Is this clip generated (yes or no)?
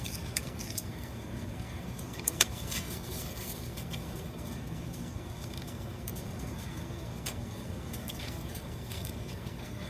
yes